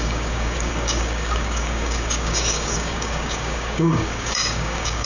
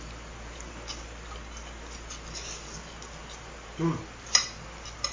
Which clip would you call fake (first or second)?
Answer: first